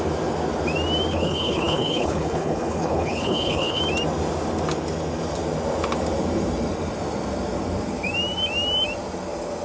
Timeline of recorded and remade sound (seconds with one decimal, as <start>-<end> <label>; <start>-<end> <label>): 0.0-1.1 recorded; 1.1-3.8 remade; 3.8-9.6 recorded